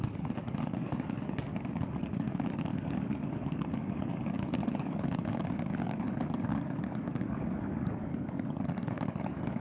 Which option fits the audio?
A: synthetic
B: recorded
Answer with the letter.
A